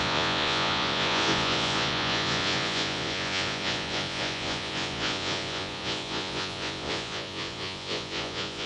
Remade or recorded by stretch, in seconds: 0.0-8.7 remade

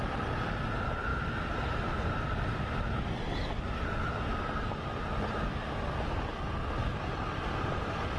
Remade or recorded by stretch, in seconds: 0.0-8.2 recorded

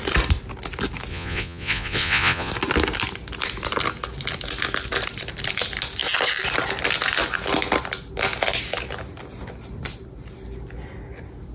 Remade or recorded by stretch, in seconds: 0.0-1.1 recorded; 1.1-2.5 remade; 2.5-11.5 recorded

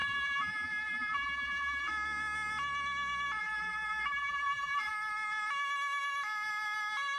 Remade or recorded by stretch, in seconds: 0.0-1.9 remade; 1.9-3.4 recorded; 3.4-4.9 remade; 4.9-7.2 recorded